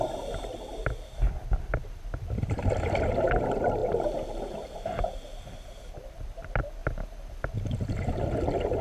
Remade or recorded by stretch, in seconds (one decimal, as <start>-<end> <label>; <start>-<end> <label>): 0.0-3.8 remade; 3.8-5.9 recorded; 5.9-6.8 remade; 6.8-7.9 recorded; 7.9-8.8 remade